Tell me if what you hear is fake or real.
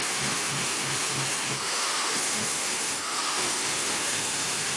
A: fake